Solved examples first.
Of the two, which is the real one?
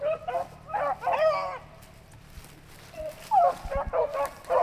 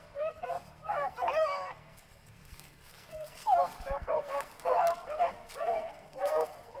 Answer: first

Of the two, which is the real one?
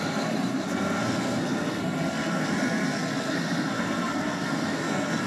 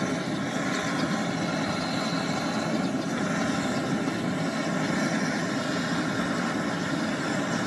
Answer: second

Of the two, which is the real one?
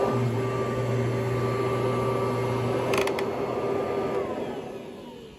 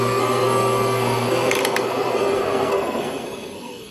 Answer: first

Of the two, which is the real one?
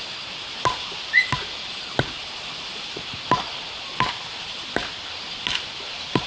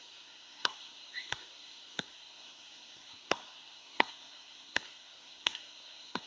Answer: first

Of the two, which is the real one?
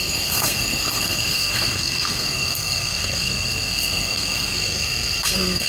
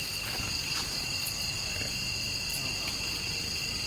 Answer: second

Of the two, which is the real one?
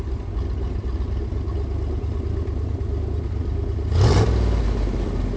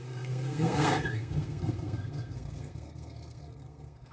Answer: first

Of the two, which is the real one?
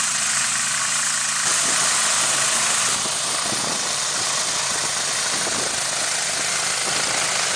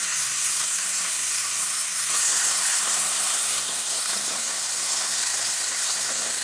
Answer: first